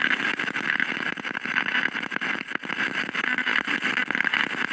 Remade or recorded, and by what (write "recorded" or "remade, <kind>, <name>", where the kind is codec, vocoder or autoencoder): recorded